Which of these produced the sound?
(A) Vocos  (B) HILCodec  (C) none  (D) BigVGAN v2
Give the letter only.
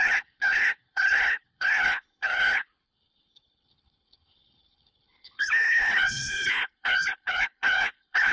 B